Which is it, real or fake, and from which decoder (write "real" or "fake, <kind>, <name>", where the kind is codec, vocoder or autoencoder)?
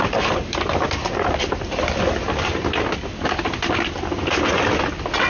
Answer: real